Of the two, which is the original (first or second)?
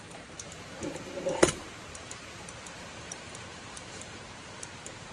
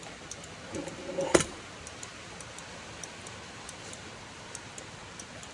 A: second